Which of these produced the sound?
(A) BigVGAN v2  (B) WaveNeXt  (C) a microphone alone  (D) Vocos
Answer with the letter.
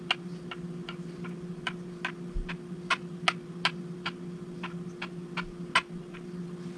C